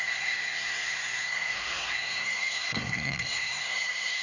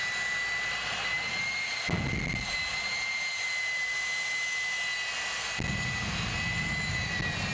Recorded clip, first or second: second